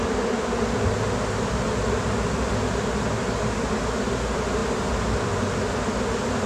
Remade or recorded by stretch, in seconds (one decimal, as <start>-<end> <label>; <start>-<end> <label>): 0.0-6.5 recorded